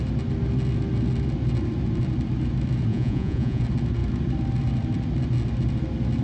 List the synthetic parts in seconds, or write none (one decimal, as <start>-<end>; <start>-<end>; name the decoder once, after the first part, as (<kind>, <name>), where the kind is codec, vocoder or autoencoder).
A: 2.9-3.6 (vocoder, Vocos)